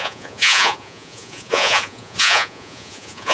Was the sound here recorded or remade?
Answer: remade